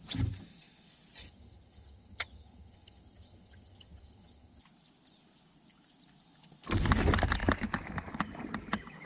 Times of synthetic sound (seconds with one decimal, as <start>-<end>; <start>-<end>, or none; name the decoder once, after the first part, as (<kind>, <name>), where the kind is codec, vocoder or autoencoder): 1.2-4.6 (vocoder, HiFi-GAN)